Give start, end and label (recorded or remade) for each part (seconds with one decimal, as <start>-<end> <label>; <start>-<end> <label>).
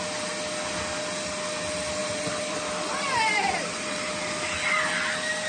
0.0-2.0 recorded; 2.0-4.8 remade; 4.8-5.5 recorded